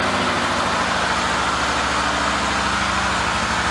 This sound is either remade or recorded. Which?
recorded